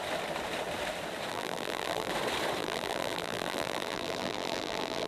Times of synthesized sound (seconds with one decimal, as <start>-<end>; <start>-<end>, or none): 1.3-2.1; 2.6-5.1